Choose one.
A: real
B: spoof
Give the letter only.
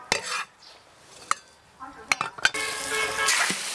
A